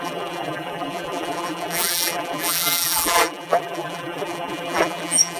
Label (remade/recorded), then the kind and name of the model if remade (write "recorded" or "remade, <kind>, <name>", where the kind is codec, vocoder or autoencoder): remade, vocoder, BigVGAN v2